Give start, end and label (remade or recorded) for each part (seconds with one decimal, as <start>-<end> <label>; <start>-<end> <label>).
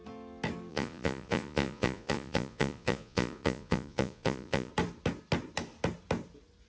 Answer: 0.0-0.7 recorded; 0.7-4.7 remade; 4.7-6.7 recorded